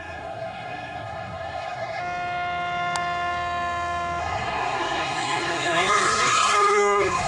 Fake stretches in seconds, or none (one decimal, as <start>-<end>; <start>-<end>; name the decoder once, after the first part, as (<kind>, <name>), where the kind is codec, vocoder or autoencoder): 0.0-2.0 (codec, SNAC); 4.2-7.3